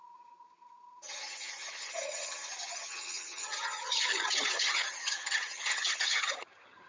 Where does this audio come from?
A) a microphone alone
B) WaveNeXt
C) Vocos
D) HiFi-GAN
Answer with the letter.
D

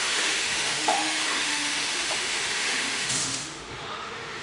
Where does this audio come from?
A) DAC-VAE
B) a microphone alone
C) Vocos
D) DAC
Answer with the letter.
A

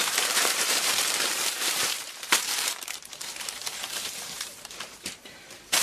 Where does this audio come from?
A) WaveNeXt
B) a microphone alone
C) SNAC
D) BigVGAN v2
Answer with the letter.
D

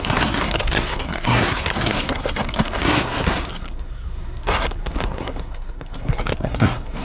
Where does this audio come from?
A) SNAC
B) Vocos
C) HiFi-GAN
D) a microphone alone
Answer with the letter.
A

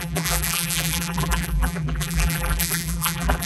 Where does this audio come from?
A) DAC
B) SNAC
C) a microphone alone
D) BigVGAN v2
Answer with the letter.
D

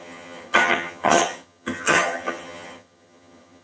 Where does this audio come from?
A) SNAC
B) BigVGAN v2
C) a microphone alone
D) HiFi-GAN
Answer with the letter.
D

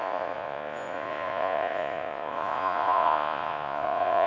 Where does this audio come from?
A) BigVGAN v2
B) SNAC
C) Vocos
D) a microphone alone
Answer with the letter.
C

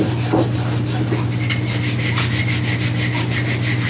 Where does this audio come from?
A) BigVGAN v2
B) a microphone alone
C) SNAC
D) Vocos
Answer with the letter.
B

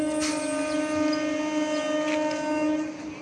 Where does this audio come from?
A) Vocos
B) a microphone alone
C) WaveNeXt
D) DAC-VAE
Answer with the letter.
B